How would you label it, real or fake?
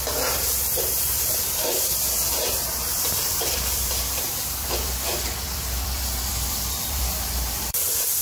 fake